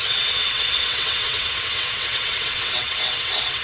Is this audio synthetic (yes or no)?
yes